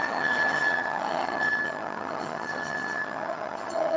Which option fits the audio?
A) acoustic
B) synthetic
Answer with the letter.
B